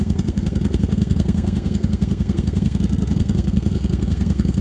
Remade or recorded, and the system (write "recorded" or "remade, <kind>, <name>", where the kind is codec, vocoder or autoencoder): remade, codec, SNAC